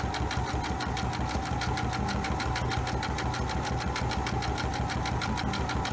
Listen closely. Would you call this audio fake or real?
real